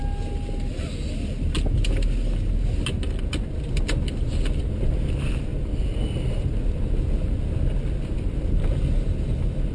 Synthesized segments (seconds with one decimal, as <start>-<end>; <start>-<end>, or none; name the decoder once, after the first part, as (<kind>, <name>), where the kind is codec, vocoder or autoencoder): none